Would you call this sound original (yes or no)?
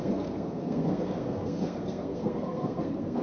no